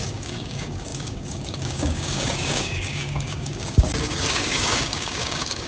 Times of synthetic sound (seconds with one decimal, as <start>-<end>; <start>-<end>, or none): 0.0-5.7